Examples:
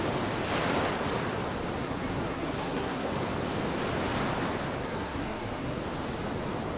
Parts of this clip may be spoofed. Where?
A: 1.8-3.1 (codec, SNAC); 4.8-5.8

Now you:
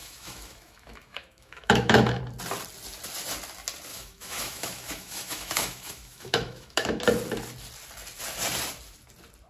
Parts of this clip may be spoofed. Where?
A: 0.0-2.2 (autoencoder, DAC-VAE); 3.9-7.0

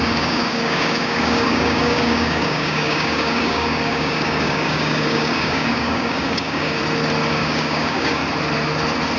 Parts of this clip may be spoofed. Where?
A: 0.0-6.8 (codec, DAC); 7.3-8.2

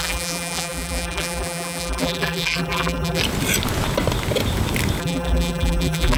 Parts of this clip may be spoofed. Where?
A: 0.0-3.2 (vocoder, BigVGAN v2); 5.0-6.2

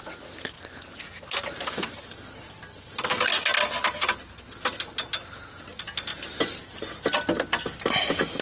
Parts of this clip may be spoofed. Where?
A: none

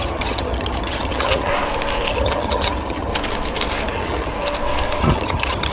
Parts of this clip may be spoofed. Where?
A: 0.0-1.5 (vocoder, HiFi-GAN); 2.1-3.1; 3.9-4.3; 5.0-5.7

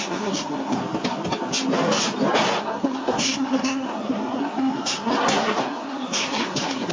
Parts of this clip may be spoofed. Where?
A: 0.0-0.8 (codec, SNAC); 2.6-6.9

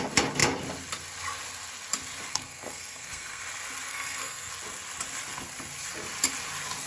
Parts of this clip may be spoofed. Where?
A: 2.3-3.4 (codec, SNAC); 3.9-4.5